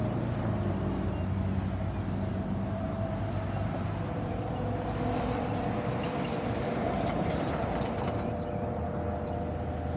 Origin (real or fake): real